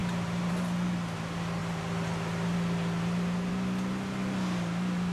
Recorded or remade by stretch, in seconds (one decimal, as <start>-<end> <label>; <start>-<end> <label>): 0.0-5.1 recorded